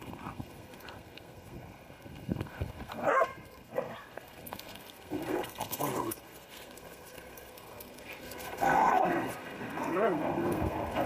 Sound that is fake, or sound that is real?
fake